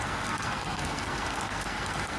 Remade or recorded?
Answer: remade